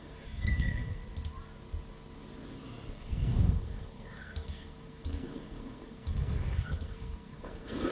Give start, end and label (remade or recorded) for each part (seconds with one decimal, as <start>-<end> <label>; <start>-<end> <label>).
0.0-1.0 remade; 1.0-2.9 recorded; 2.9-7.9 remade

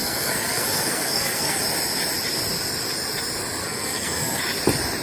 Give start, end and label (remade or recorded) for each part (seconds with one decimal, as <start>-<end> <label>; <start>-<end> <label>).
0.0-1.6 remade; 1.6-3.6 recorded; 3.6-4.4 remade; 4.4-5.0 recorded

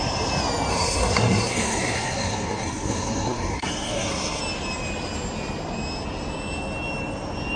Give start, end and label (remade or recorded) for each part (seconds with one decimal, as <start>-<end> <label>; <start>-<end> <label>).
0.0-0.7 recorded; 0.7-4.4 remade; 4.4-7.6 recorded